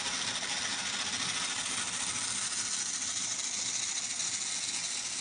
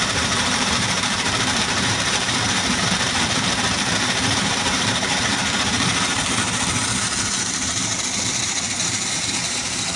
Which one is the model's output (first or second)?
second